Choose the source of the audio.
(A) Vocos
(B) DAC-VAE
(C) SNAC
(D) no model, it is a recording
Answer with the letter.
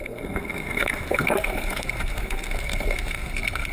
C